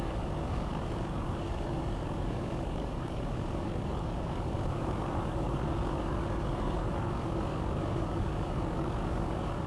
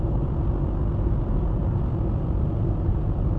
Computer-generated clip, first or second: first